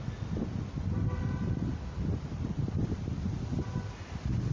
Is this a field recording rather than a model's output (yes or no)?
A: yes